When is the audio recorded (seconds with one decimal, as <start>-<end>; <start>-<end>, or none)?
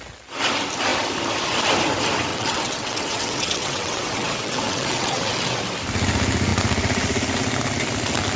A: 0.0-2.3; 5.6-8.4